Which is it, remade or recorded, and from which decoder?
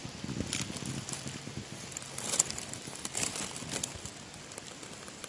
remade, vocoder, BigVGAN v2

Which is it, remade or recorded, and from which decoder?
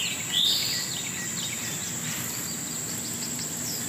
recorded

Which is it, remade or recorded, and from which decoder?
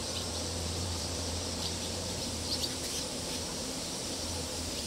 remade, vocoder, BigVGAN v2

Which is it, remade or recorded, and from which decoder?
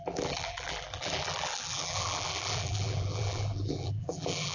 remade, vocoder, BigVGAN v2